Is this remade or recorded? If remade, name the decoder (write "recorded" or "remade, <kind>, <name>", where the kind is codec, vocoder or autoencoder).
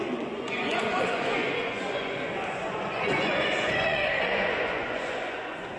remade, vocoder, Vocos